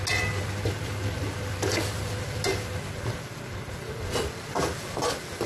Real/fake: real